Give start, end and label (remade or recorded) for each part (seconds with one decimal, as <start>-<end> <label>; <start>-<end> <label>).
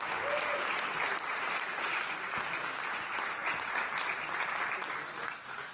0.0-1.7 recorded; 1.7-2.3 remade; 2.3-5.7 recorded